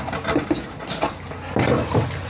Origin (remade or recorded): recorded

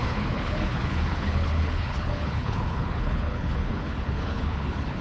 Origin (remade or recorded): remade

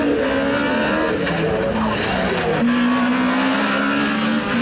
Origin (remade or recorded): recorded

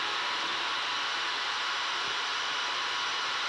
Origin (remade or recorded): remade